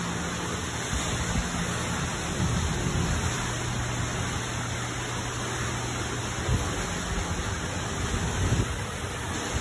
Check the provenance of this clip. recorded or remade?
recorded